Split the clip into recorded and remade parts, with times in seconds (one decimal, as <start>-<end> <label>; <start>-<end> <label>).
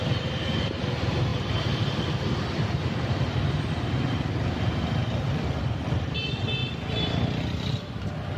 0.0-8.4 remade